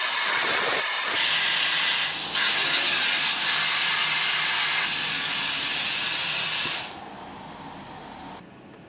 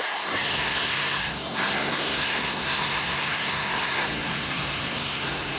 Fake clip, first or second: second